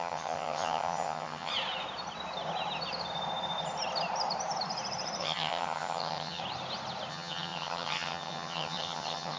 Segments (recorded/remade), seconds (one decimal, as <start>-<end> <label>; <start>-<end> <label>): 0.0-1.5 remade; 1.5-5.2 recorded; 5.2-6.4 remade; 6.4-7.1 recorded; 7.1-9.4 remade